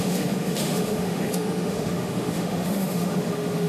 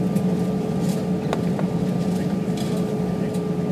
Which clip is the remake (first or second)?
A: first